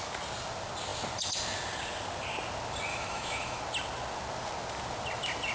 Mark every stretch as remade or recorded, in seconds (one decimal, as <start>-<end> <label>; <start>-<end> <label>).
0.0-2.9 recorded; 2.9-3.6 remade; 3.6-5.5 recorded